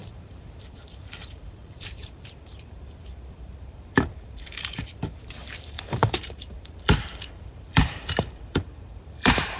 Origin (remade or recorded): remade